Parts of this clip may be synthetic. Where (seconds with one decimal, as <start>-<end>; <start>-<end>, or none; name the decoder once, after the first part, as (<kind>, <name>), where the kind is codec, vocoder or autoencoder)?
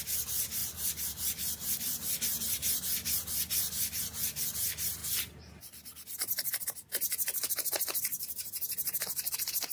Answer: 0.6-2.2 (vocoder, BigVGAN v2)